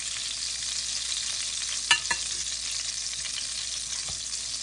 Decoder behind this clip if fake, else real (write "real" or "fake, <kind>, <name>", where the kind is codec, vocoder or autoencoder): real